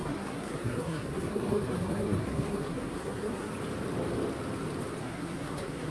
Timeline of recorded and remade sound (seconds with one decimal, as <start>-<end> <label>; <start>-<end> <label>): 0.0-3.5 remade; 3.5-5.0 recorded; 5.0-5.9 remade